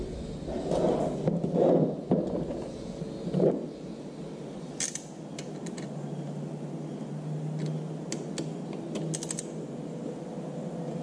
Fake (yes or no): no